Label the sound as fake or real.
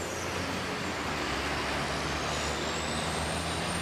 real